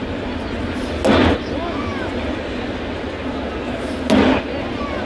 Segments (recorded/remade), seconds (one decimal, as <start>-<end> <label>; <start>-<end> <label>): 0.0-5.1 recorded